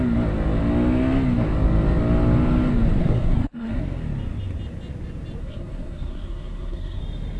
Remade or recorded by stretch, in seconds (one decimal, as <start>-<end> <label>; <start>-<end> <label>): 0.0-3.0 recorded; 3.0-3.8 remade; 3.8-5.4 recorded; 5.4-7.0 remade; 7.0-7.4 recorded